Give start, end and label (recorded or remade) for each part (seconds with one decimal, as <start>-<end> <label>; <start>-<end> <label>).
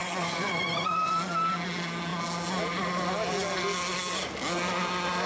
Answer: 0.0-1.1 remade; 1.1-5.3 recorded